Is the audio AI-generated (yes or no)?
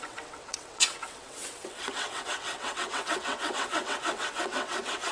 yes